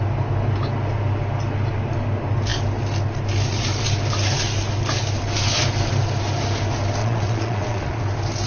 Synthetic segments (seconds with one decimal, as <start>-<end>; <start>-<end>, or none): 7.0-8.0